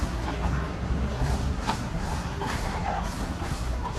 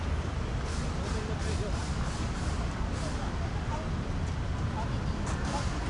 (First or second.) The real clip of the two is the second